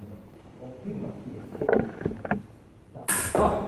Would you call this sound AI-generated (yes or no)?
yes